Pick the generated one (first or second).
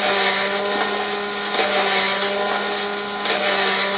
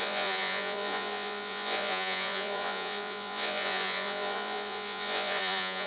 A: second